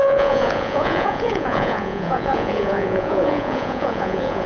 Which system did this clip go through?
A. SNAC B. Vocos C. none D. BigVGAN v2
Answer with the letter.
B